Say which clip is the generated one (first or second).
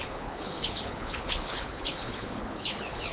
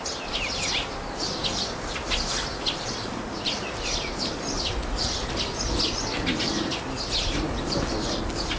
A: first